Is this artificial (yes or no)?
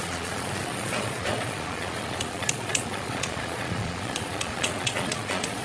yes